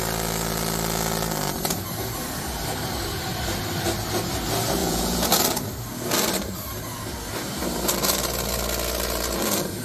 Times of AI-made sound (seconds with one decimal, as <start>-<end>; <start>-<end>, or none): 4.8-5.3

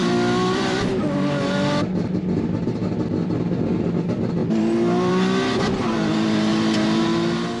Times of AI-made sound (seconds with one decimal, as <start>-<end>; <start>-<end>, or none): 0.0-0.9; 4.4-5.1

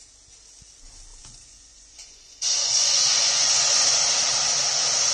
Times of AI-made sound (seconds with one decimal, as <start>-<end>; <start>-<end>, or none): 1.1-4.0

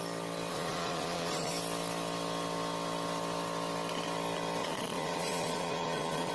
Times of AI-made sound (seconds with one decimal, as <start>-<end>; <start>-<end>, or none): 0.5-1.5; 4.6-6.3

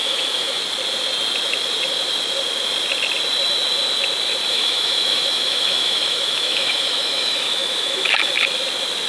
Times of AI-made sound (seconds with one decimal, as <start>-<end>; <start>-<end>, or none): 0.0-0.6; 4.5-8.3

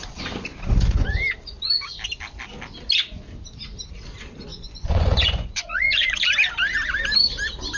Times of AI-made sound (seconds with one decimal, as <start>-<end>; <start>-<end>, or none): 4.5-6.2

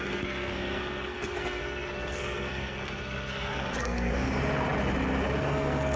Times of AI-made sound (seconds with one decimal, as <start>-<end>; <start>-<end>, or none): 0.0-4.1; 5.4-6.0

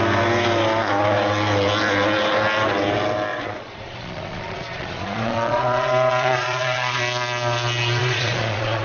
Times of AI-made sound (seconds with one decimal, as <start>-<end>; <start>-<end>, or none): 3.3-7.0; 8.0-8.8